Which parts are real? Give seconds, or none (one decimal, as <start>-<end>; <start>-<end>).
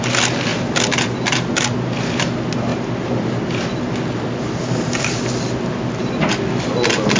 0.0-7.2